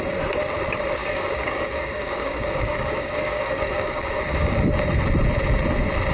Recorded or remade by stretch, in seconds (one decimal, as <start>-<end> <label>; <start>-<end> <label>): 0.0-1.0 recorded; 1.0-4.7 remade; 4.7-6.1 recorded